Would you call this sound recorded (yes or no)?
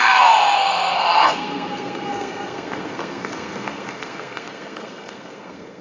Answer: no